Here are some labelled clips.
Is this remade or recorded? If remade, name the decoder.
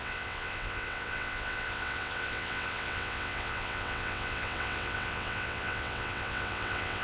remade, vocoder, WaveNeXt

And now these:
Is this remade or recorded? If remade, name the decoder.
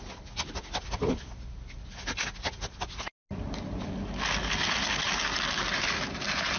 recorded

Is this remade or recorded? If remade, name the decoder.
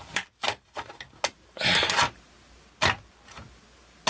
recorded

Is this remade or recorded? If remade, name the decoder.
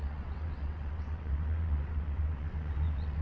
remade, vocoder, WaveNeXt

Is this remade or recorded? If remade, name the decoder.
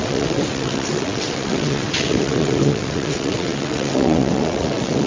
remade, vocoder, WaveNeXt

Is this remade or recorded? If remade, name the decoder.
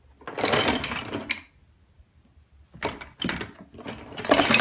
recorded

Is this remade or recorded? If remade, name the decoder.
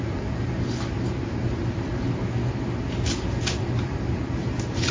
recorded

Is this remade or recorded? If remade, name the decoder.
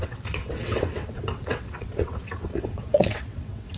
remade, vocoder, WaveNeXt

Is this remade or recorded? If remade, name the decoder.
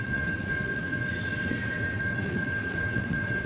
remade, vocoder, WaveNeXt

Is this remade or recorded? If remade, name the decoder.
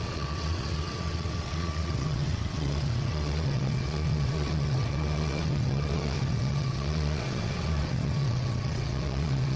remade, vocoder, WaveNeXt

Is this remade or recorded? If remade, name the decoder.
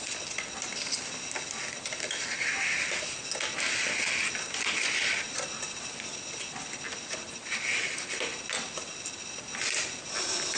recorded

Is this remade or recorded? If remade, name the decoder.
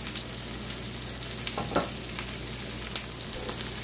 recorded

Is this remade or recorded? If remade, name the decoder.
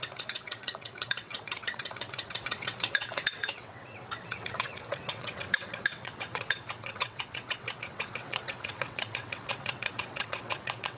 remade, vocoder, WaveNeXt